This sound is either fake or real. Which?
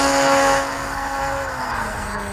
fake